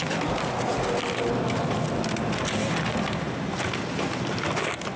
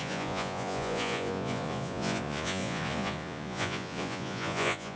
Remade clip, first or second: second